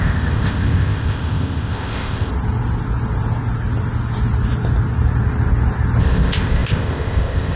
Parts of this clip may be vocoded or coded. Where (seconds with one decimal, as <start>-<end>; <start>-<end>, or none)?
0.0-2.3; 6.0-7.6